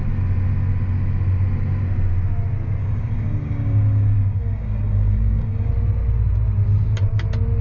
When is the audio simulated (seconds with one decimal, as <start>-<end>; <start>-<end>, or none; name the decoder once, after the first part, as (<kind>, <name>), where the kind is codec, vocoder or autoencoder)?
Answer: 2.8-5.7 (codec, DAC)